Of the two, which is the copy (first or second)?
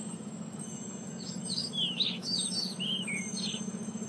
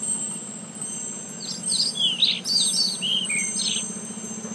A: first